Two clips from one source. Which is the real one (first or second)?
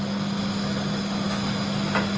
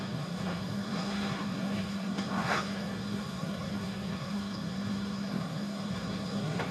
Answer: first